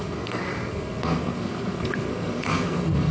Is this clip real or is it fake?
fake